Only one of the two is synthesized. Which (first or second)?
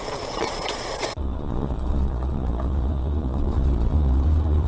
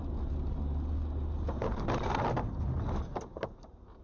first